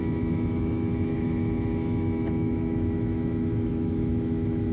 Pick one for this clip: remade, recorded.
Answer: remade